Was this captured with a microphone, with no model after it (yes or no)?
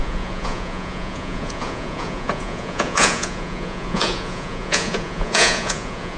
no